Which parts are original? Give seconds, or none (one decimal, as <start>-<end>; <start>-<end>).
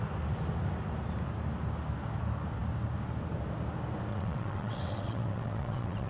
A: 0.0-4.1